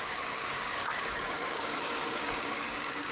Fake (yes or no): yes